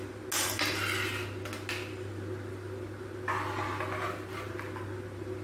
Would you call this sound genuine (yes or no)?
yes